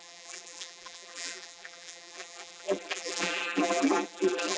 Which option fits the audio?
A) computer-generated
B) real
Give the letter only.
A